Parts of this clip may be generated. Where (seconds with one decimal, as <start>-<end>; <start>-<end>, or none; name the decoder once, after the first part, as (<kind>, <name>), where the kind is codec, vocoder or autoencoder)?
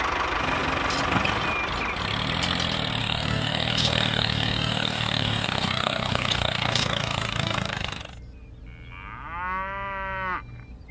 3.0-8.0 (codec, DAC)